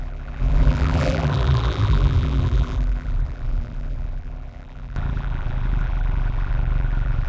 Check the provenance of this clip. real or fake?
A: fake